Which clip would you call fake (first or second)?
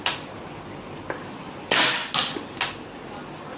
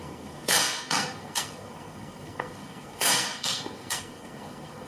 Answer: second